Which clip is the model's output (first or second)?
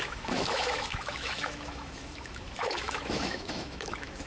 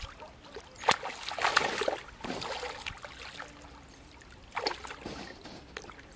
first